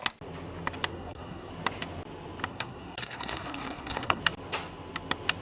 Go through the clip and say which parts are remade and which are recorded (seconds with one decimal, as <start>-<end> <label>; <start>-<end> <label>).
0.0-0.9 recorded; 0.9-1.5 remade; 1.5-2.5 recorded; 2.5-4.2 remade; 4.2-5.4 recorded